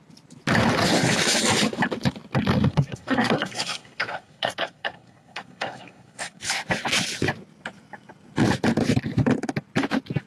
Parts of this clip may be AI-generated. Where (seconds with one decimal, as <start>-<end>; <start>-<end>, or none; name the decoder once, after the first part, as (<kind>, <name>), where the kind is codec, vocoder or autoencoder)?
2.7-6.4 (codec, SNAC)